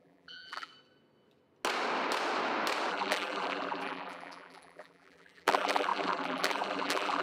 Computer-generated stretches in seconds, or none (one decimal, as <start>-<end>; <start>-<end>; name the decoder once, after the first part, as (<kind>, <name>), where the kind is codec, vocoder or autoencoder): 0.0-0.7 (vocoder, BigVGAN v2); 2.9-7.2